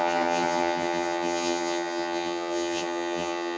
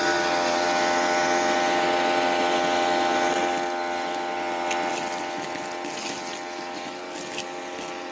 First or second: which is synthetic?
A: first